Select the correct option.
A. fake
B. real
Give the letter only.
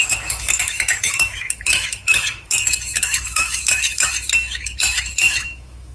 A